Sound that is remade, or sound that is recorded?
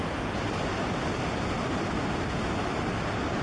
recorded